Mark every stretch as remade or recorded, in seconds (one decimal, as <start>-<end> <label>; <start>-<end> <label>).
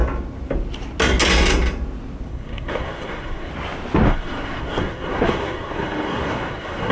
0.0-2.3 recorded; 2.3-3.5 remade; 3.5-4.1 recorded; 4.1-6.9 remade